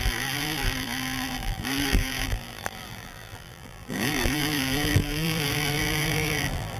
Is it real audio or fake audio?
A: fake